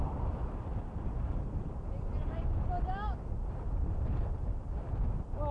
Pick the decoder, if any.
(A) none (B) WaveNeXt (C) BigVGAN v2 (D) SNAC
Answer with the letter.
A